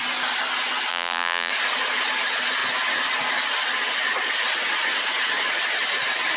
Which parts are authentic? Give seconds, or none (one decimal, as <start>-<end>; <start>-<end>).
0.0-0.9; 1.5-6.4